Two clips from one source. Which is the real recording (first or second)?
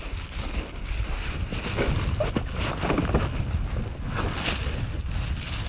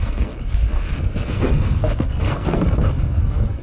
first